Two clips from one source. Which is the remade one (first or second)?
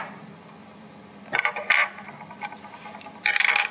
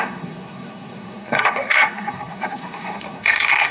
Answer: second